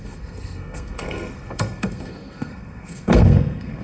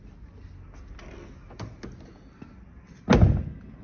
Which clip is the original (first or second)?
second